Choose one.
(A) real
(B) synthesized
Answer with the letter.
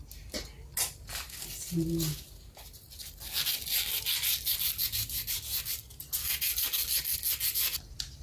A